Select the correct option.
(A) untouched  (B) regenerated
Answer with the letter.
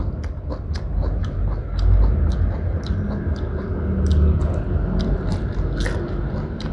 A